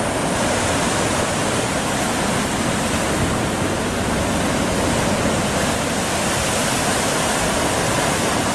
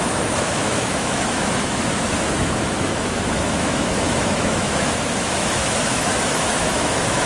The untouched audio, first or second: first